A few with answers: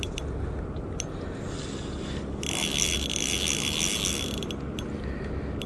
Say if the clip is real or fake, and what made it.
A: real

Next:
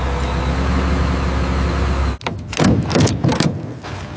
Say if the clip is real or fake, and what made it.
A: real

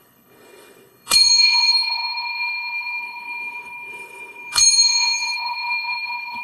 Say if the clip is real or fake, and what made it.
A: fake, codec, HILCodec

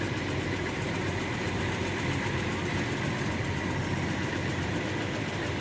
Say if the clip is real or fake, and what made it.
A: real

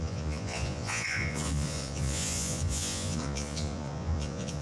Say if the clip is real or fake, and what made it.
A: fake, vocoder, Vocos